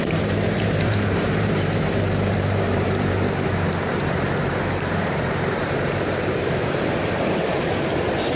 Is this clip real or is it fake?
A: fake